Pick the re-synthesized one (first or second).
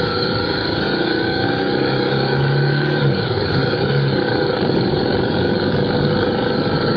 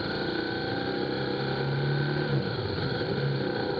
first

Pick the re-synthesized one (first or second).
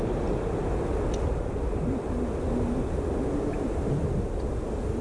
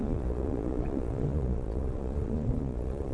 second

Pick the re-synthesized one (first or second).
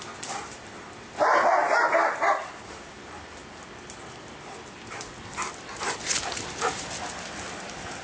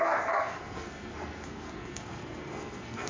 second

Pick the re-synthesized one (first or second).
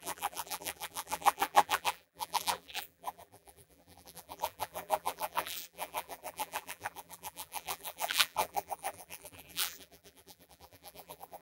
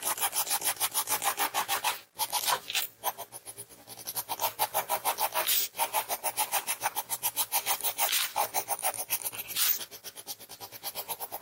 first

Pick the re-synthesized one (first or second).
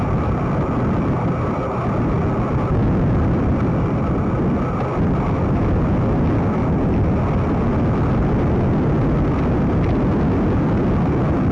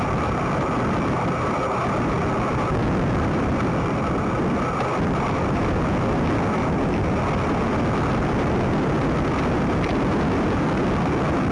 second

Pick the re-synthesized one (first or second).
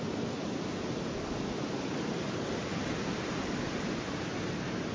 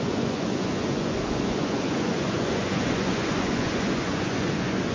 second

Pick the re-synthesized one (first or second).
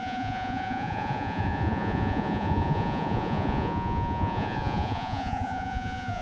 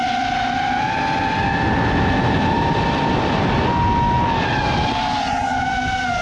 first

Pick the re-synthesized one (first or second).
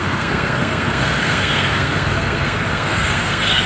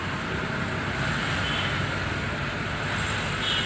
first